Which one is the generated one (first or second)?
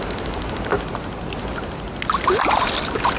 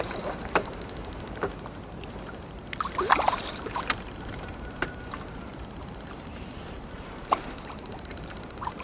second